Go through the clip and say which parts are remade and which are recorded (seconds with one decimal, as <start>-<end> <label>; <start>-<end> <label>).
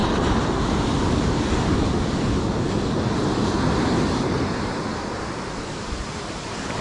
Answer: 0.0-1.9 remade; 1.9-3.2 recorded; 3.2-4.8 remade; 4.8-6.0 recorded; 6.0-6.8 remade